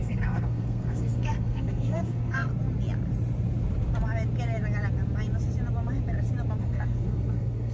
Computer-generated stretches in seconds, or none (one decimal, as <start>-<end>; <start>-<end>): 0.0-2.5; 6.6-7.7